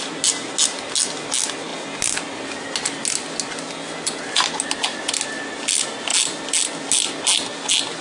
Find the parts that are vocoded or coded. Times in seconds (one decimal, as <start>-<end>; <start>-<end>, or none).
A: none